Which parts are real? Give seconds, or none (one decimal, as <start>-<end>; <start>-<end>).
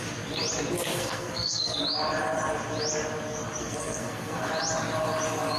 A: 0.0-0.9; 1.8-3.6; 4.5-5.6